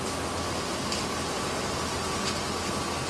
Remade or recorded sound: recorded